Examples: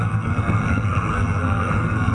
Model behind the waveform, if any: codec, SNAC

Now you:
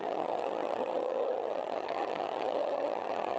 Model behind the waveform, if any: vocoder, HiFi-GAN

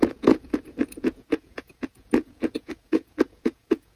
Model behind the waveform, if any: vocoder, Vocos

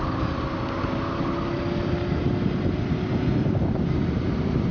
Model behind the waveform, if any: none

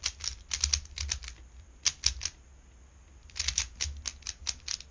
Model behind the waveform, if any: none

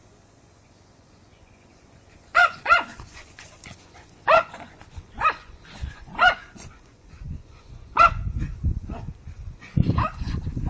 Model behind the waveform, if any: vocoder, Vocos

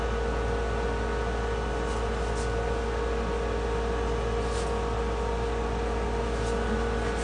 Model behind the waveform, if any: none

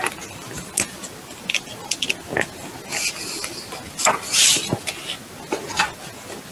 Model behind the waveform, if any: none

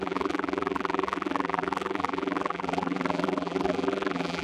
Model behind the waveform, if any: vocoder, BigVGAN v2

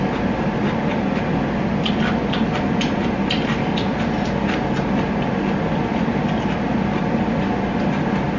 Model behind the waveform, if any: none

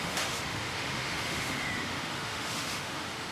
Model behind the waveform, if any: autoencoder, DAC-VAE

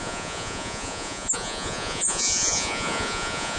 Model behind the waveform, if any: vocoder, Vocos